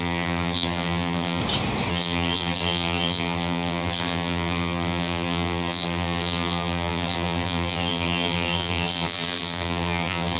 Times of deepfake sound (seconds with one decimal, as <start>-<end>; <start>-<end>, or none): 0.0-1.4; 1.9-10.4